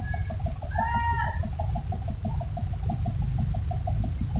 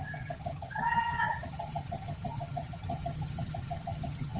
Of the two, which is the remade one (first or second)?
second